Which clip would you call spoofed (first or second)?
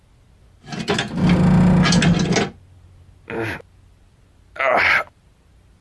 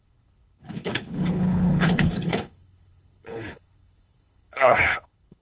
second